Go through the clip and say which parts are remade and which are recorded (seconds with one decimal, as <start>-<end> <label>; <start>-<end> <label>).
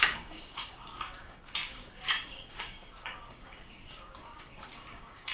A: 0.0-5.3 remade